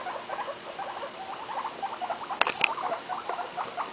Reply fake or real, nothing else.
real